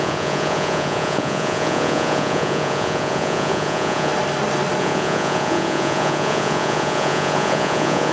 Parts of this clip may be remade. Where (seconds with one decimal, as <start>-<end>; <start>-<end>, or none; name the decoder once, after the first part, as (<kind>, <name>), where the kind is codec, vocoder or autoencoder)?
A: 0.0-4.1 (vocoder, Vocos); 4.8-8.1